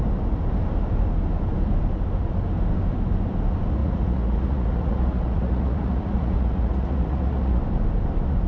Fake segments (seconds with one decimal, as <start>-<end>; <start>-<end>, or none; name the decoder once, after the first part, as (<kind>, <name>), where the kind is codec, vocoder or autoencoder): 3.8-7.6 (vocoder, Vocos)